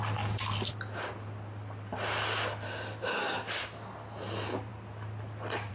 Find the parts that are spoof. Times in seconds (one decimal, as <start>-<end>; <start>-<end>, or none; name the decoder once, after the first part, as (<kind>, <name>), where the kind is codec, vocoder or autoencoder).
none